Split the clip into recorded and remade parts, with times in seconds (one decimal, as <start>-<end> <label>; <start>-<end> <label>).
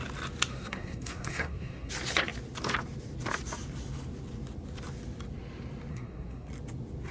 0.0-0.5 recorded; 0.5-1.9 remade; 1.9-5.9 recorded; 5.9-6.5 remade; 6.5-7.1 recorded